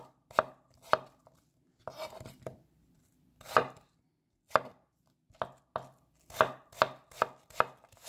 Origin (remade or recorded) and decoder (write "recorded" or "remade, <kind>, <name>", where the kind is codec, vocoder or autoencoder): recorded